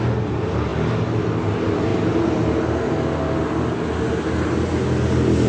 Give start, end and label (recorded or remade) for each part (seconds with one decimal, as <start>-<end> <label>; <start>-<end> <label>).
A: 0.0-5.5 recorded

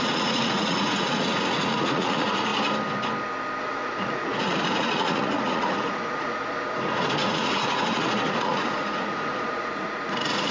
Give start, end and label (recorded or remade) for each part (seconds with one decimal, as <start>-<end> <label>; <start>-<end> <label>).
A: 0.0-2.5 remade; 2.5-3.6 recorded; 3.6-10.5 remade

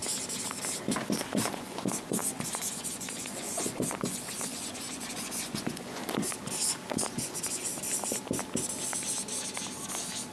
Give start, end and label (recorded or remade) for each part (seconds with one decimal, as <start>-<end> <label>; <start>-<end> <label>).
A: 0.0-1.5 recorded; 1.5-6.0 remade; 6.0-6.9 recorded; 6.9-7.7 remade; 7.7-10.3 recorded

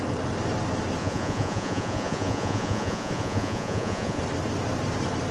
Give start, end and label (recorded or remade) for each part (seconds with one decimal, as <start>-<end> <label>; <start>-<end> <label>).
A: 0.0-1.0 recorded; 1.0-4.2 remade; 4.2-5.3 recorded

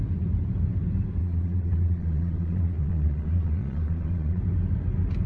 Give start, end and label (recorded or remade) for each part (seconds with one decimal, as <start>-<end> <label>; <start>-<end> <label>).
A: 0.0-1.2 recorded; 1.2-4.4 remade; 4.4-5.3 recorded

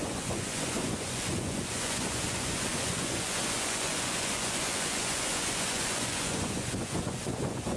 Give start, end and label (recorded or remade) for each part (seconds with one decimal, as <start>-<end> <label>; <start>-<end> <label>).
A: 0.0-7.8 remade

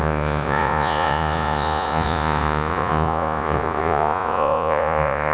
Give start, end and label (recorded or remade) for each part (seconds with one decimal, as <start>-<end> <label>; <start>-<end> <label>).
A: 0.0-5.3 remade

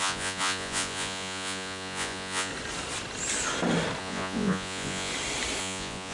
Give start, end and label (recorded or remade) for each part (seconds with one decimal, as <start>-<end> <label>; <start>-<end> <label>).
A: 0.0-2.5 remade; 2.5-4.0 recorded; 4.0-5.1 remade; 5.1-5.6 recorded; 5.6-6.1 remade